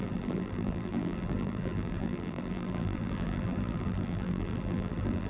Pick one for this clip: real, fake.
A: fake